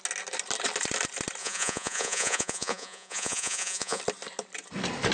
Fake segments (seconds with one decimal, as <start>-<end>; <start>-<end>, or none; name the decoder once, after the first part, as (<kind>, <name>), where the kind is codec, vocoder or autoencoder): 1.4-4.0 (vocoder, Vocos)